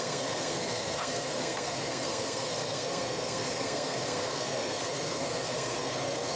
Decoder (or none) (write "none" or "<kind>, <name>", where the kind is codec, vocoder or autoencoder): codec, SNAC